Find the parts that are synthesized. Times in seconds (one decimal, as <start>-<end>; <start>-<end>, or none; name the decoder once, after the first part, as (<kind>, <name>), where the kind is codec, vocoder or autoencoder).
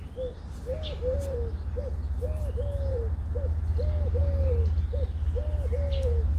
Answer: none